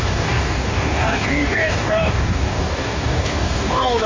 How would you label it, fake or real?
fake